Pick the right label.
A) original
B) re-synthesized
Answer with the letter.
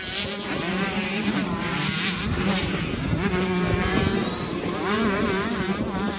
B